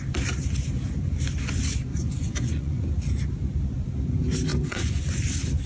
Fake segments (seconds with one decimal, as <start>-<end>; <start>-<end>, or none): 1.9-2.8; 4.5-5.0